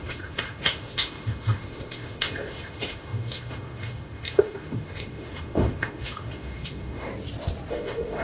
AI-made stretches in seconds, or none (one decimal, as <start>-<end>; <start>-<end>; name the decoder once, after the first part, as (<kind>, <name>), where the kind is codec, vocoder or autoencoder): 0.0-7.1 (autoencoder, DAC-VAE); 7.7-8.2